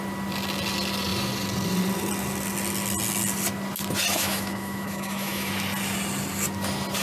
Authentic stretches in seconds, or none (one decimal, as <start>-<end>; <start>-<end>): 0.0-4.1; 5.5-7.0